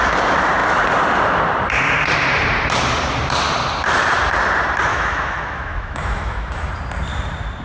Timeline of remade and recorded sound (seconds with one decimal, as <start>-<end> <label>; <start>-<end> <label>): 0.0-4.9 recorded; 4.9-6.7 remade; 6.7-7.6 recorded